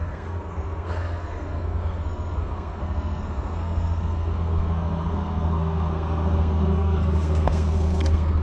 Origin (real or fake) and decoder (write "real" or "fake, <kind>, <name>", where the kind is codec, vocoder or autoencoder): fake, codec, SNAC